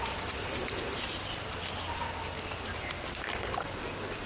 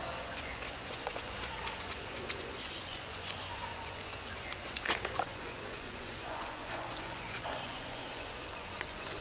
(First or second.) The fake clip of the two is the second